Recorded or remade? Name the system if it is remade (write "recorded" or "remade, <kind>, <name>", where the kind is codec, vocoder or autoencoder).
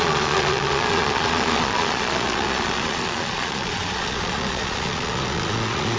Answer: remade, vocoder, Vocos